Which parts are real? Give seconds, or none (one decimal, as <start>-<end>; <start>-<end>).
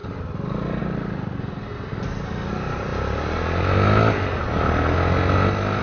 0.0-5.8